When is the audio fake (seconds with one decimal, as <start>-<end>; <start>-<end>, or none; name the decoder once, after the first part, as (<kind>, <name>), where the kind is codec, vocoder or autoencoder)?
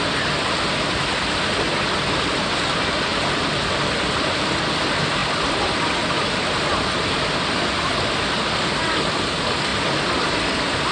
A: none